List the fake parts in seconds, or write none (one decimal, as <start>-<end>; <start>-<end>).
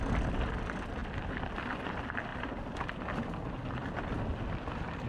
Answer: none